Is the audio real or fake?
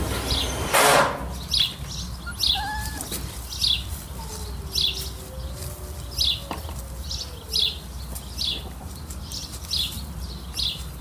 real